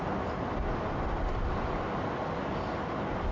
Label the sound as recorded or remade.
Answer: recorded